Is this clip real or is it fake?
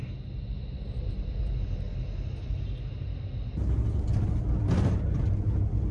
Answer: real